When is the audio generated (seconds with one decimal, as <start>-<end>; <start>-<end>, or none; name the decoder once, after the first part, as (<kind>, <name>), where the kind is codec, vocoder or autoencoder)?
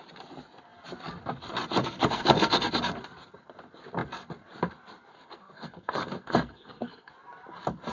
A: 1.8-2.7 (codec, SNAC); 5.1-7.1